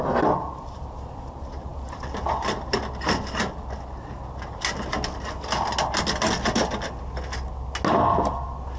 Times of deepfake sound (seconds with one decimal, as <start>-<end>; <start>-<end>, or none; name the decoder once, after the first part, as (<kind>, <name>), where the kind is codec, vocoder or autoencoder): none